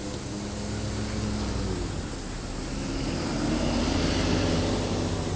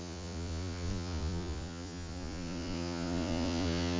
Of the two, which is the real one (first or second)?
first